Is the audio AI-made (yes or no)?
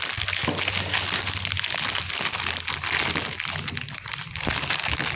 no